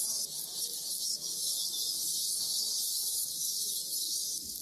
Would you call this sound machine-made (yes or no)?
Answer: no